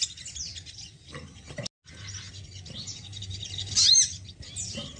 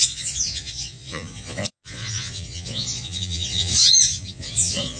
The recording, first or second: first